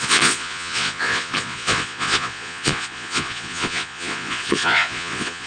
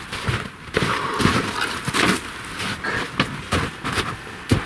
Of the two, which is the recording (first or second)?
second